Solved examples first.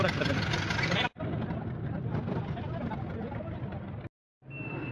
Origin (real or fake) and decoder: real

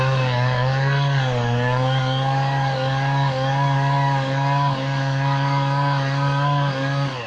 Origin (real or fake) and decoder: fake, codec, DAC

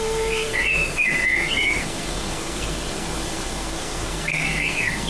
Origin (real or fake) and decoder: fake, codec, SNAC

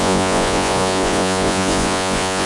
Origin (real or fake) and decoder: fake, vocoder, Vocos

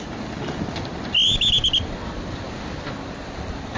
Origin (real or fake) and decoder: real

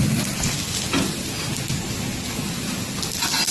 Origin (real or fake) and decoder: real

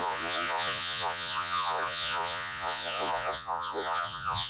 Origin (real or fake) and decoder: fake, vocoder, Vocos